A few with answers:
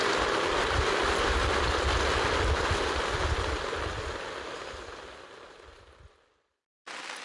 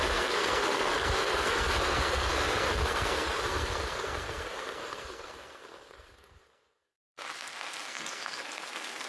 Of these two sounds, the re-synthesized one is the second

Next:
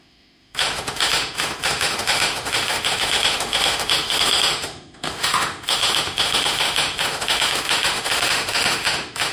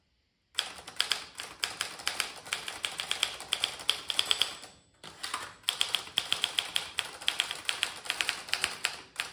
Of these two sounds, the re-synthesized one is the first